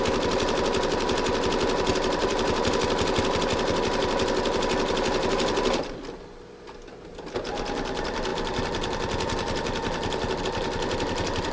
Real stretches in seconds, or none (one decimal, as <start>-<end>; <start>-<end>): 0.0-2.2; 2.8-5.8; 6.6-11.5